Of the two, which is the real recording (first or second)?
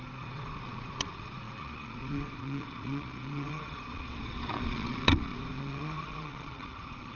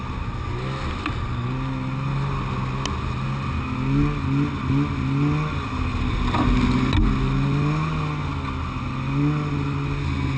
second